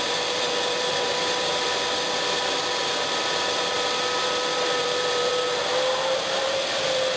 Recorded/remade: remade